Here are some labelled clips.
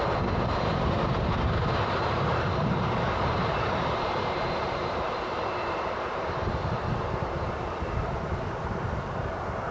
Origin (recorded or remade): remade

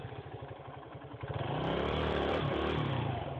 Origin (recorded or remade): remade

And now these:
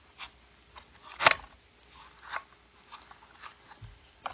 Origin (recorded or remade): recorded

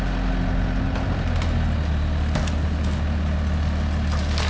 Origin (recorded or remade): recorded